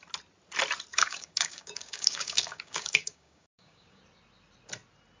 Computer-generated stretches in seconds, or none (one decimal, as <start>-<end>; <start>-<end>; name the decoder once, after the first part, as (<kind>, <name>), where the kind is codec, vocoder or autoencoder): 0.9-4.0 (codec, DAC)